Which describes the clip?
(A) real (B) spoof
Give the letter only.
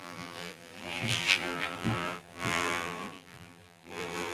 B